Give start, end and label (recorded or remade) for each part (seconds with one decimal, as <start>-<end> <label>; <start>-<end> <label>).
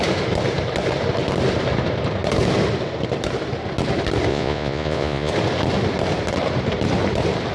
0.0-4.3 recorded; 4.3-5.3 remade; 5.3-7.5 recorded